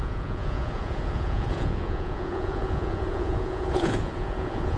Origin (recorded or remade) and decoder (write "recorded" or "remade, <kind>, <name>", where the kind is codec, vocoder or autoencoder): remade, vocoder, Vocos